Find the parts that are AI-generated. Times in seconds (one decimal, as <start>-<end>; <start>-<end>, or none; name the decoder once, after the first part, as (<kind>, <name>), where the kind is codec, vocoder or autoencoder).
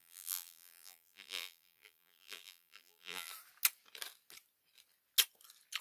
0.0-3.3 (vocoder, BigVGAN v2)